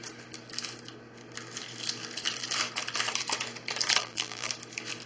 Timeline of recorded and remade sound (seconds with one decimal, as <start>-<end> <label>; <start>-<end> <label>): 0.0-4.0 recorded; 4.0-4.5 remade; 4.5-5.1 recorded